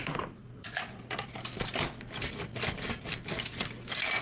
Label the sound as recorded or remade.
recorded